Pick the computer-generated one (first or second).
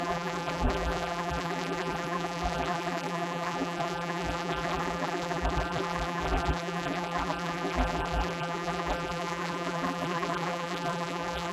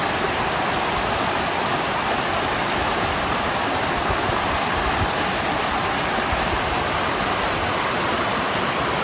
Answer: first